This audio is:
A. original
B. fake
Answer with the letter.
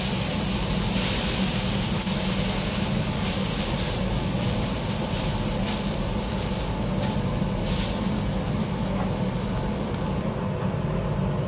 A